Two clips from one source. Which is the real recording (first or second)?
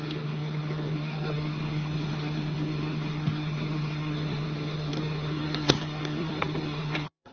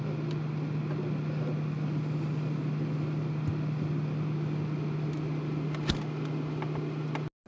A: second